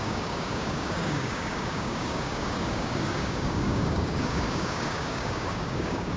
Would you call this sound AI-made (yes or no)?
yes